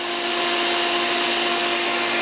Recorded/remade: recorded